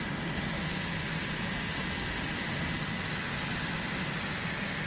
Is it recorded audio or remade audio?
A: recorded